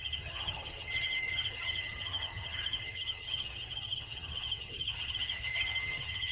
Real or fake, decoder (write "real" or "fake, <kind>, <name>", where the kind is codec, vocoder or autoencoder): fake, vocoder, HiFi-GAN